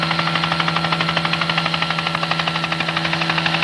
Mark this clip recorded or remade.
recorded